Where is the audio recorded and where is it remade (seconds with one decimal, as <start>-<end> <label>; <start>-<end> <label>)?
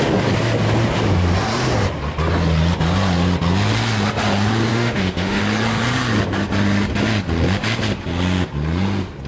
0.0-4.7 recorded; 4.7-5.4 remade; 5.4-9.3 recorded